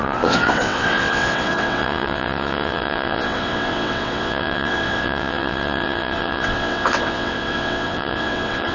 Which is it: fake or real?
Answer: fake